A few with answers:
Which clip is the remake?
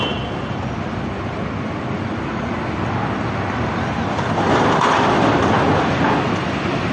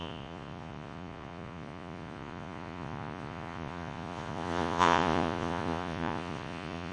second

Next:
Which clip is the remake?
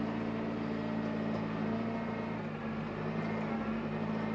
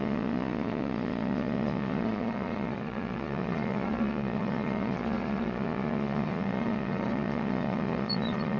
second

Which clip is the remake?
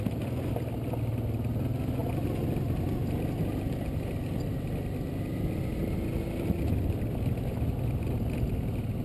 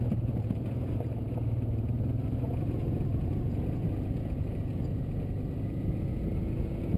second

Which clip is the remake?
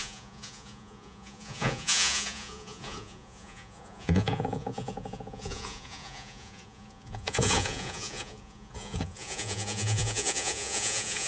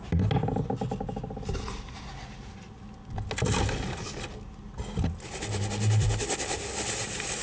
first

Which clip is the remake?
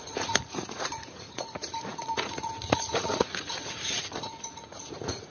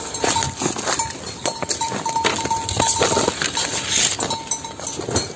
first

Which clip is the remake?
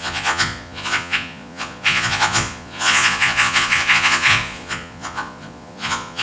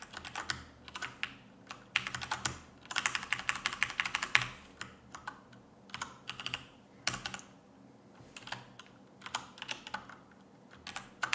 first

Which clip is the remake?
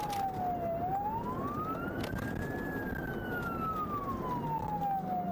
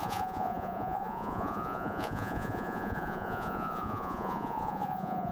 second